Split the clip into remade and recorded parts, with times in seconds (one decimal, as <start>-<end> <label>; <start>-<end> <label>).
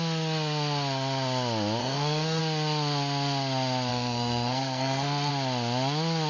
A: 0.0-1.8 recorded; 1.8-2.4 remade; 2.4-3.9 recorded; 3.9-5.3 remade; 5.3-6.3 recorded